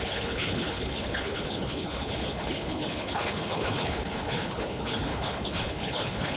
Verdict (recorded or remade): remade